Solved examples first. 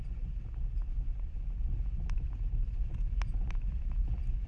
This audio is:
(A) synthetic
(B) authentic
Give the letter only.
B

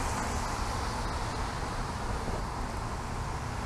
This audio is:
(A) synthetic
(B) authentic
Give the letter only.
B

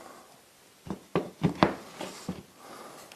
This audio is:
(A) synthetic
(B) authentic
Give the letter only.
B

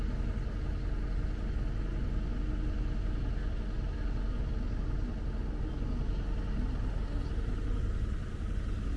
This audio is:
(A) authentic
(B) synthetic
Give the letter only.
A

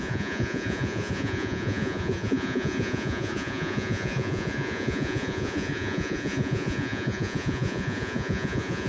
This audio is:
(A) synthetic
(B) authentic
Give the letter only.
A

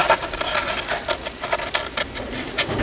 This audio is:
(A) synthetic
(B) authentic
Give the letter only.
B